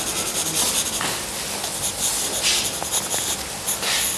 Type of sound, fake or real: real